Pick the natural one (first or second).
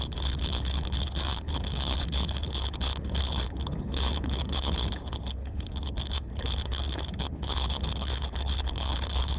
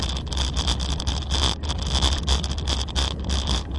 second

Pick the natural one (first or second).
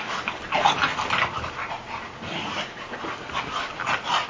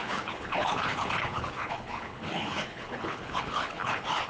first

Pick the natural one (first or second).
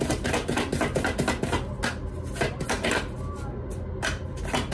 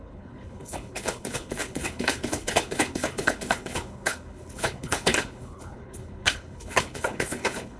first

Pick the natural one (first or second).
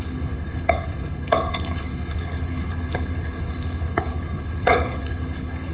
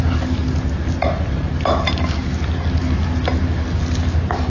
second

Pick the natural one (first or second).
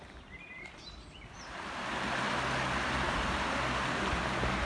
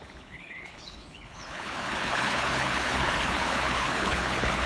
first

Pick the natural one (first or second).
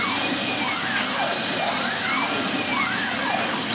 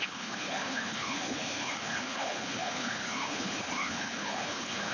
first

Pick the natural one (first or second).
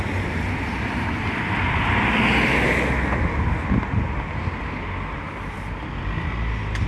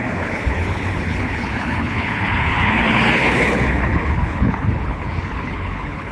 first